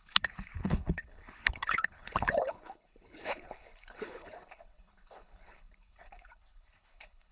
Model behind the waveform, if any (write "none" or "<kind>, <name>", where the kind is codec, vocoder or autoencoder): codec, HILCodec